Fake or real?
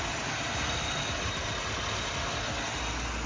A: real